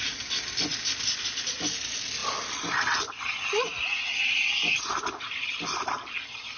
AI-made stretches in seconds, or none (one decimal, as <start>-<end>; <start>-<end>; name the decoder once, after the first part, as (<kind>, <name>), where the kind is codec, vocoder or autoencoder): none